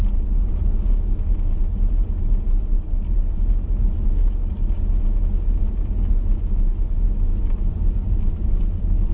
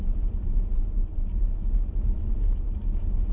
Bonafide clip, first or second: first